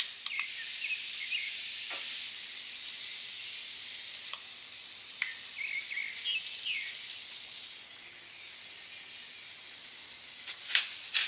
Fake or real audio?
real